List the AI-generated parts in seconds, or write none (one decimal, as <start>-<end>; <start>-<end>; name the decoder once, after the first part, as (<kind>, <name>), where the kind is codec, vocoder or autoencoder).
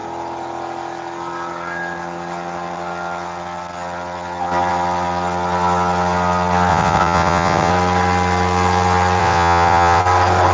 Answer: 6.7-7.7 (vocoder, WaveNeXt); 9.2-10.0